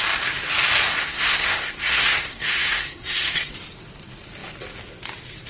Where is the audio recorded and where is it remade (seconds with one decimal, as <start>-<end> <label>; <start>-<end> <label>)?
0.0-1.0 recorded; 1.0-3.5 remade; 3.5-5.5 recorded